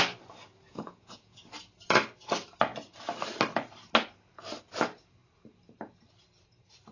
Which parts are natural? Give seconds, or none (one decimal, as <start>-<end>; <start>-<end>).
0.0-0.7; 1.4-6.9